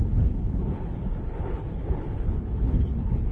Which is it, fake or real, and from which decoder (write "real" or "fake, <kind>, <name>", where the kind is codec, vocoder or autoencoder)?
fake, codec, HILCodec